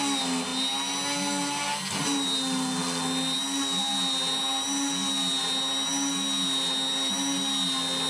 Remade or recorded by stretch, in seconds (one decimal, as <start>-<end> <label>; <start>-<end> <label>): 0.0-8.1 recorded